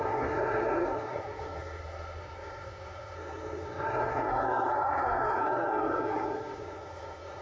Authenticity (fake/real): fake